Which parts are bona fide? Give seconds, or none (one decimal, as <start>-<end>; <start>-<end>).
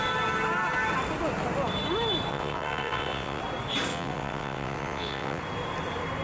0.0-2.3; 3.4-3.9; 5.4-6.2